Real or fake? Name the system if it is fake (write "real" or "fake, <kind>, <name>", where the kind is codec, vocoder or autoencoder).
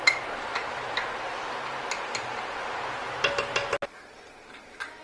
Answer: real